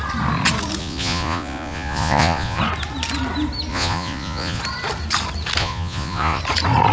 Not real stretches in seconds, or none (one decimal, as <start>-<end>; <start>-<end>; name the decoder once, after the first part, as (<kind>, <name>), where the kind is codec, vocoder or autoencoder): 0.8-2.6 (vocoder, Vocos); 3.7-4.6; 5.6-6.4